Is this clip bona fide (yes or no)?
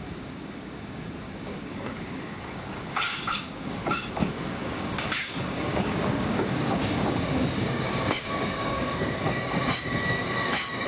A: no